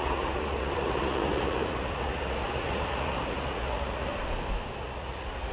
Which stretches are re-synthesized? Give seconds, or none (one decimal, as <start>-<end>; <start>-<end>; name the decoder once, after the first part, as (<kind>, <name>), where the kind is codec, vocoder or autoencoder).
0.0-4.1 (vocoder, Vocos); 4.8-5.5